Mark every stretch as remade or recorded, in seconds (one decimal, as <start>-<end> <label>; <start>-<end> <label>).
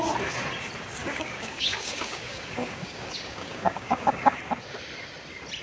0.0-1.0 recorded; 1.0-4.4 remade; 4.4-5.6 recorded